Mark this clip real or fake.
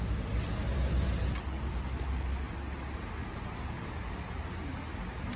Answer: real